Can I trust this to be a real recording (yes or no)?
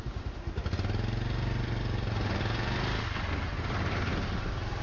yes